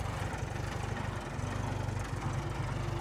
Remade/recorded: recorded